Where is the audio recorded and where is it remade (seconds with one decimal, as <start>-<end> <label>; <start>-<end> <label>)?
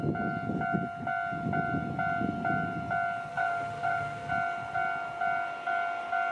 0.0-3.3 recorded; 3.3-4.3 remade; 4.3-6.3 recorded